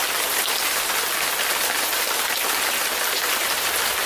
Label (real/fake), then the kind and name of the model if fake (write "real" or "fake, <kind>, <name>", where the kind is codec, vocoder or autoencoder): real